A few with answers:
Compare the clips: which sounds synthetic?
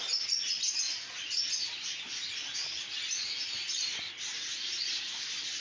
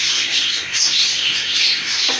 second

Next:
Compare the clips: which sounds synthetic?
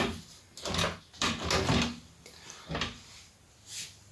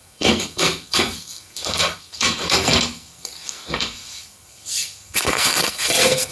second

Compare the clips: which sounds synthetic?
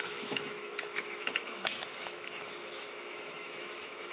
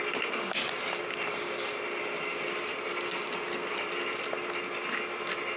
first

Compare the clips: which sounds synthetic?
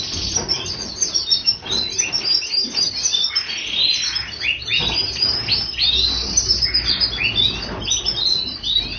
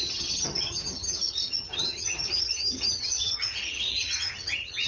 second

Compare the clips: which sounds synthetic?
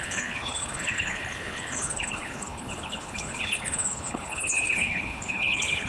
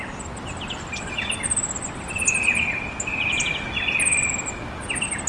first